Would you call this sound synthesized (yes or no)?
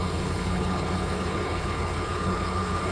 yes